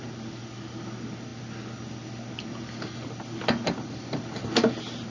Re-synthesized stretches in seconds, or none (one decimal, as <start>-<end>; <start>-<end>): none